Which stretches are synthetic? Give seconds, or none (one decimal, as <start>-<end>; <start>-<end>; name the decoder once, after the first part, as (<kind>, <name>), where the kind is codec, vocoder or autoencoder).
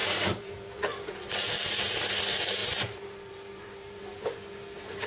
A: 0.0-0.8 (vocoder, BigVGAN v2); 2.6-4.0